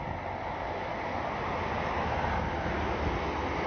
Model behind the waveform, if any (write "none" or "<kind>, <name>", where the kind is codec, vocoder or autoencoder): none